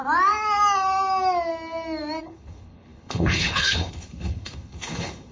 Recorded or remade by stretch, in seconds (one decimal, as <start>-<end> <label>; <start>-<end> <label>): 0.0-2.2 recorded; 2.2-5.3 remade